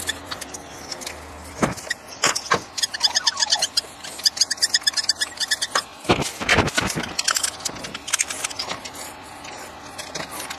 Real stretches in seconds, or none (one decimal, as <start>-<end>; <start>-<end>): 0.0-10.6